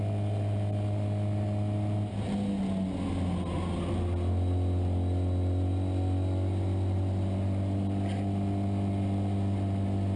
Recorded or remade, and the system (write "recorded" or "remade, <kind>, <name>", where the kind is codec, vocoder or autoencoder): recorded